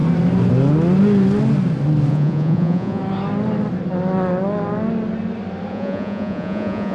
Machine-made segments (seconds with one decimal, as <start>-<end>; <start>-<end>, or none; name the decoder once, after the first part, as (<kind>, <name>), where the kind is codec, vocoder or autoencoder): 2.1-3.0 (vocoder, Vocos); 5.7-6.9